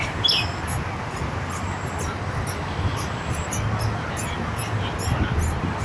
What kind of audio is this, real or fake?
real